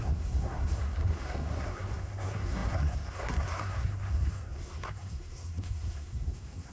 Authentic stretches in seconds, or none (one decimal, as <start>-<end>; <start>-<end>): none